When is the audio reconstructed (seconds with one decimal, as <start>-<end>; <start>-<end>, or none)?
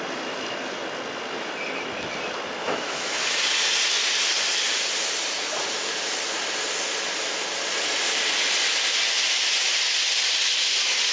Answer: 2.6-3.2